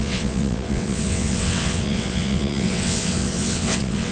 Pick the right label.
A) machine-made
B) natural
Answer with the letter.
A